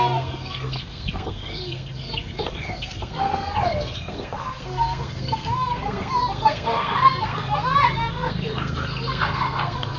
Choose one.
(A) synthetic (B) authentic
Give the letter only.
A